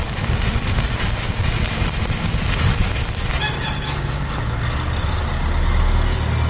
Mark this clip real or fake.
real